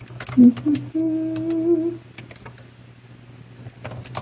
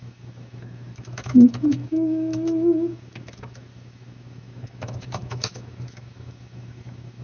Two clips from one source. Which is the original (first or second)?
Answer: first